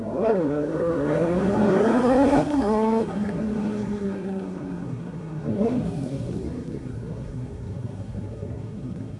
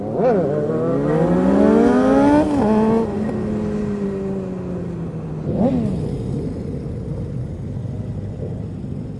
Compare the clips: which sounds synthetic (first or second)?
first